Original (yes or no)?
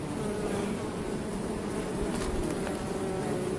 yes